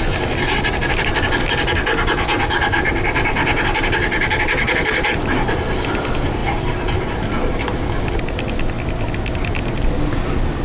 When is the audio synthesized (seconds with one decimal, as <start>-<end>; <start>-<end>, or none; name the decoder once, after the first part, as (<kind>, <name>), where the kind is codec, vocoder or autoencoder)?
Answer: none